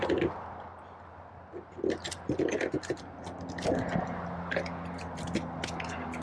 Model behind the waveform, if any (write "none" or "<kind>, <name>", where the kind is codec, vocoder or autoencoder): none